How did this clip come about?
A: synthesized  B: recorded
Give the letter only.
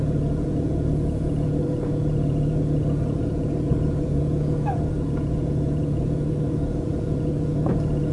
A